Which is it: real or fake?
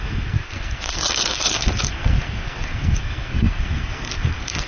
fake